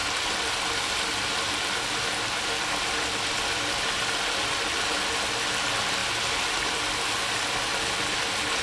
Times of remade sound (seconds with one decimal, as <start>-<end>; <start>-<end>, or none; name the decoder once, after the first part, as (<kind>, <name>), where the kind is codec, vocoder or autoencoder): 0.0-1.5 (vocoder, BigVGAN v2); 6.0-6.8